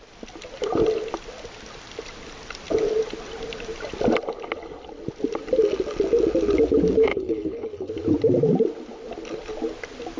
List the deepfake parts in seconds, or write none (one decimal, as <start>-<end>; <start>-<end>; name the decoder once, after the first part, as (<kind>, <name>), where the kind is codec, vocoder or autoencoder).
7.1-7.9 (codec, HILCodec)